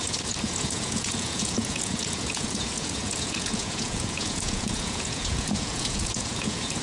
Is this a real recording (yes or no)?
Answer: no